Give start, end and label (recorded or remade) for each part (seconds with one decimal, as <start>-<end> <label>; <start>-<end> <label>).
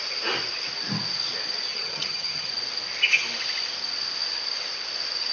0.0-1.7 recorded; 1.7-2.5 remade; 2.5-5.3 recorded